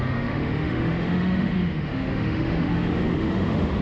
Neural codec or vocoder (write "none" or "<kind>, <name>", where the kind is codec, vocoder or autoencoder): autoencoder, DAC-VAE